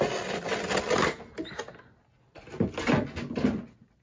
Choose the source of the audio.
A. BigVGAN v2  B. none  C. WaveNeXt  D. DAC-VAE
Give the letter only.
B